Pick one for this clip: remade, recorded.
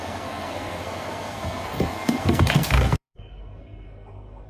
remade